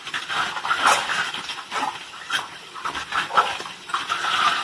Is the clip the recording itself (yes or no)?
yes